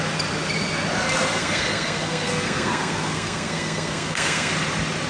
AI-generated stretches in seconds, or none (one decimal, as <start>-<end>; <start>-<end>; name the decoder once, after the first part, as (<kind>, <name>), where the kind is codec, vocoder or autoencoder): 1.4-4.5 (codec, SNAC)